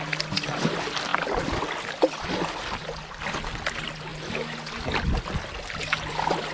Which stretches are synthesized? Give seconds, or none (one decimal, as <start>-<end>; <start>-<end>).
none